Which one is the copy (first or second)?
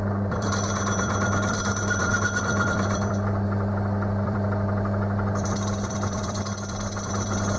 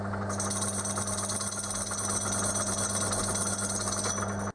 first